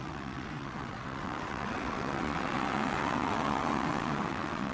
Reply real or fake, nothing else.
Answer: fake